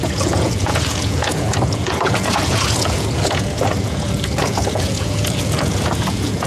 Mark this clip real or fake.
fake